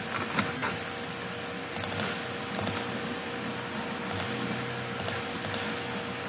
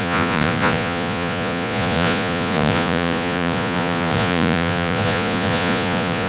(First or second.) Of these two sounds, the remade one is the second